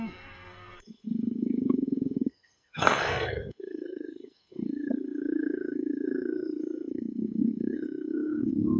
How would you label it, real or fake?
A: fake